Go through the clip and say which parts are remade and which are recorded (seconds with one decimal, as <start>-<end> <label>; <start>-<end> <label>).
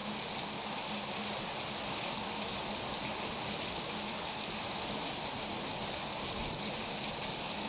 0.0-7.7 recorded